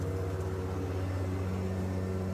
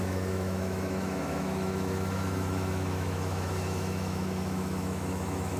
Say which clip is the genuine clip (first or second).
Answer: first